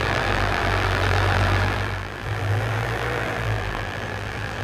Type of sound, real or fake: fake